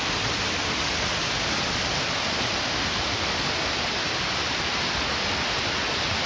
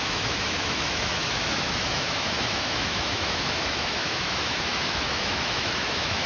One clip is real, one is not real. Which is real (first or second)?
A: first